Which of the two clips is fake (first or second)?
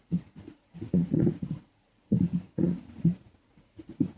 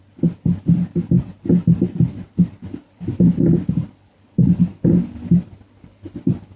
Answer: first